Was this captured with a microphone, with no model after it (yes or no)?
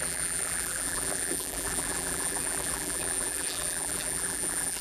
no